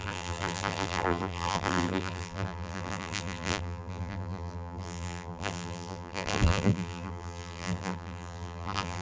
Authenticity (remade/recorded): remade